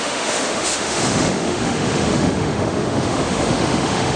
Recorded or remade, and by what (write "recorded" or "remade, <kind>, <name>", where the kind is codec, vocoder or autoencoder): remade, autoencoder, DAC-VAE